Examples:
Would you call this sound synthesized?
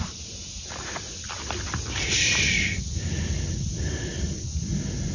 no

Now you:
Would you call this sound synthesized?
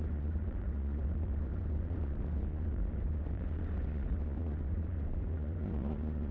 yes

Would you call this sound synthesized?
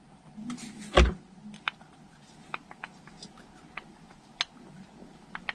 no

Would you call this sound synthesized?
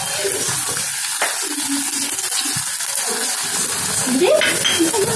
no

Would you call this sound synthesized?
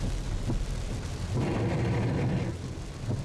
no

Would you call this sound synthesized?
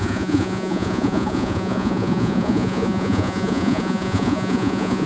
yes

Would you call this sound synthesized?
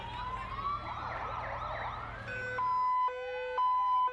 no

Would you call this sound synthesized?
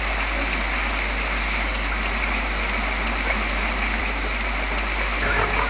no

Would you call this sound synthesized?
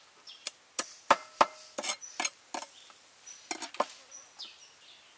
no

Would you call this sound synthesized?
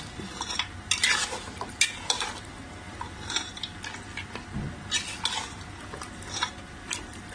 no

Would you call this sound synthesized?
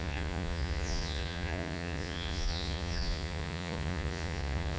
yes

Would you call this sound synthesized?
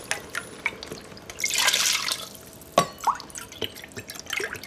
no